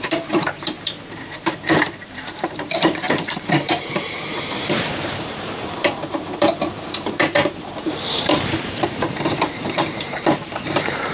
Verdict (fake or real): fake